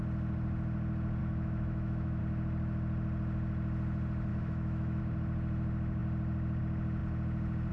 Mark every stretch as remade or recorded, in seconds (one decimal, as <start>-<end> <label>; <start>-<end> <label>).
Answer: 0.0-1.2 recorded; 1.2-2.2 remade; 2.2-4.3 recorded; 4.3-5.0 remade; 5.0-7.7 recorded

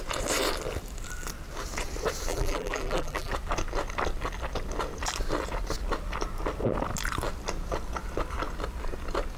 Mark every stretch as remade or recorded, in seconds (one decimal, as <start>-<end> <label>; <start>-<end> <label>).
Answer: 0.0-2.3 recorded; 2.3-3.3 remade; 3.3-9.4 recorded

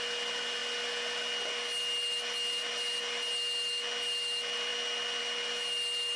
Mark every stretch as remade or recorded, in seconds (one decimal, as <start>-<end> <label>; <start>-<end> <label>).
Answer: 0.0-6.2 recorded

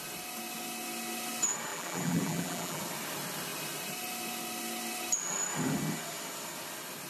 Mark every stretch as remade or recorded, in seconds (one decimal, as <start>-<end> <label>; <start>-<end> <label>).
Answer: 0.0-1.7 recorded; 1.7-2.8 remade; 2.8-7.1 recorded

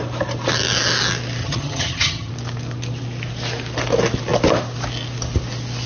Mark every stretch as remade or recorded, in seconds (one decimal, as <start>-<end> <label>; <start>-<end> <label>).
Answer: 0.0-1.4 recorded; 1.4-2.3 remade; 2.3-5.9 recorded

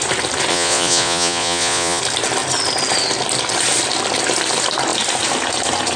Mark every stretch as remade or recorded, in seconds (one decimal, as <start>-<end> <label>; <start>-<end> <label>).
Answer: 0.0-0.5 recorded; 0.5-2.0 remade; 2.0-6.0 recorded

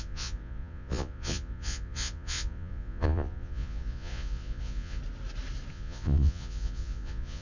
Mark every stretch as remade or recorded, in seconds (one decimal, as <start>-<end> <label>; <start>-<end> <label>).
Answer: 0.0-5.0 remade; 5.0-5.7 recorded; 5.7-7.4 remade

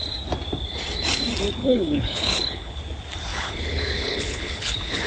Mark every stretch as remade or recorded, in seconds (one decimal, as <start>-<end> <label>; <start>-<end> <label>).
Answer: 0.0-1.6 recorded; 1.6-2.8 remade; 2.8-3.3 recorded; 3.3-5.1 remade